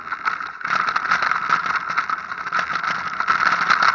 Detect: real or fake real